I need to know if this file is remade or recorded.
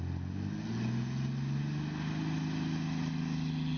recorded